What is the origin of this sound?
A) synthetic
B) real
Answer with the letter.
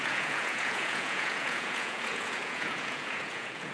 A